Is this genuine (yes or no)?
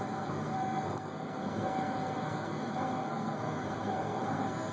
no